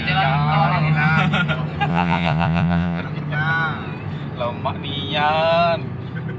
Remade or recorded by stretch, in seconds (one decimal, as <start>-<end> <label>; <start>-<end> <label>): 0.0-1.9 recorded; 1.9-3.0 remade; 3.0-6.4 recorded